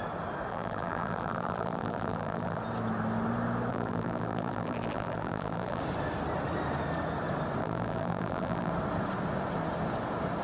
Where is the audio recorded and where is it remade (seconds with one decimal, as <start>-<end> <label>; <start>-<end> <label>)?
0.0-0.5 recorded; 0.5-2.6 remade; 2.6-3.7 recorded; 3.7-5.8 remade; 5.8-7.6 recorded; 7.6-8.7 remade; 8.7-10.4 recorded